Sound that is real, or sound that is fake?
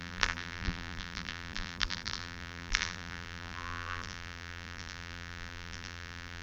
fake